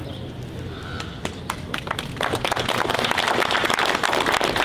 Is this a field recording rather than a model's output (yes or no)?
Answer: yes